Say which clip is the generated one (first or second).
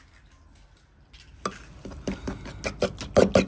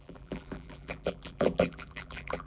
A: second